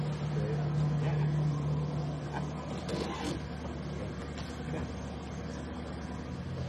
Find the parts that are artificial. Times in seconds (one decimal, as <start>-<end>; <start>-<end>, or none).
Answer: none